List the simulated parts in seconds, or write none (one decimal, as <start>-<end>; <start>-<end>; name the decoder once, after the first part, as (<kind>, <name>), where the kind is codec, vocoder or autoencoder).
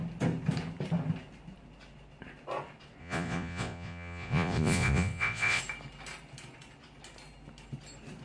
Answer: 3.0-5.6 (vocoder, Vocos)